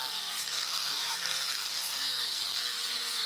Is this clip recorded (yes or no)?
no